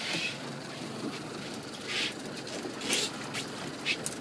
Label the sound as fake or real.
real